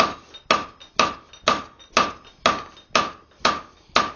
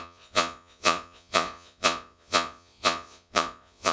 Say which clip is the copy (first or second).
second